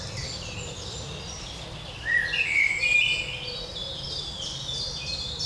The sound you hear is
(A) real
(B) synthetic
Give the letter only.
A